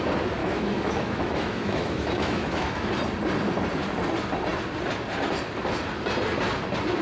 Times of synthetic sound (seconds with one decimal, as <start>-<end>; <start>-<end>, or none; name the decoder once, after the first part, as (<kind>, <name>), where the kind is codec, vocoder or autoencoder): 0.4-2.9 (autoencoder, DAC-VAE)